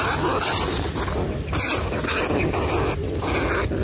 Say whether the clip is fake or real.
real